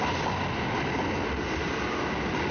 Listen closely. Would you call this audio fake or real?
real